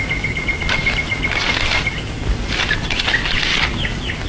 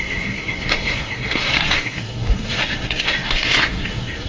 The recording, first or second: first